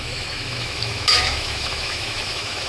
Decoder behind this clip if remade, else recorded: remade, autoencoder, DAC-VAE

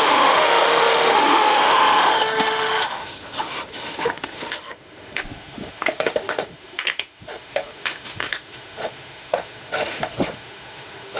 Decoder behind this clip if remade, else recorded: remade, autoencoder, DAC-VAE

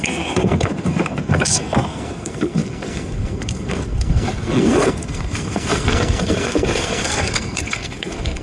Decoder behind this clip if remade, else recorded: remade, codec, SNAC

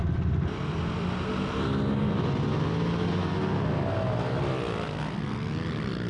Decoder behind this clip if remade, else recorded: recorded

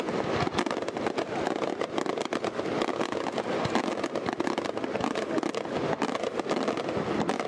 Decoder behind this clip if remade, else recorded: recorded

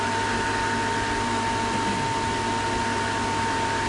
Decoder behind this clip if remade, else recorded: recorded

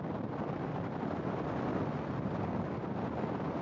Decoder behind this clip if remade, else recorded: recorded